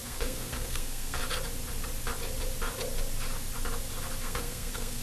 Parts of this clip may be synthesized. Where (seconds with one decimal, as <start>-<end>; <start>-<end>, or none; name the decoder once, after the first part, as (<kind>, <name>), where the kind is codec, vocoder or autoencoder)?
0.0-1.2 (codec, SNAC); 4.2-5.0